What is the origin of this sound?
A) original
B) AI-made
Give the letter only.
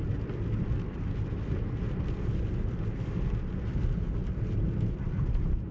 A